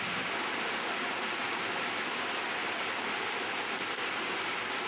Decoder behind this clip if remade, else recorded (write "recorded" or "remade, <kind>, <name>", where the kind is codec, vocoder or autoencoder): recorded